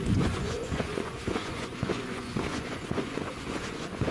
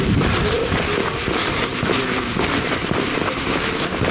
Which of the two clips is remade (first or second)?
first